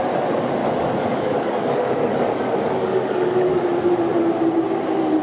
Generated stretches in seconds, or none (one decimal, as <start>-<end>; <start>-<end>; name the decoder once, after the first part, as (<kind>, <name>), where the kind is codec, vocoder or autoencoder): 0.6-3.6 (codec, DAC)